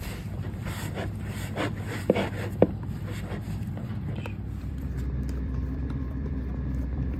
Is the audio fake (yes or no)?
yes